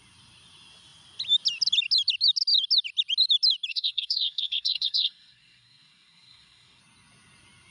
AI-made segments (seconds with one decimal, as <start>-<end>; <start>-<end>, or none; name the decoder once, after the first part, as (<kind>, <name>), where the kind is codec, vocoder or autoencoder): 3.7-6.8 (codec, SNAC)